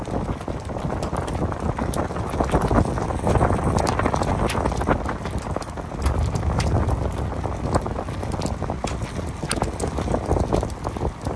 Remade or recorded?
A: recorded